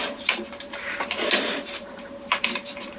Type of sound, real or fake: fake